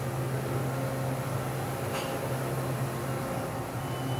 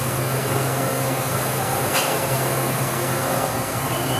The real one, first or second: first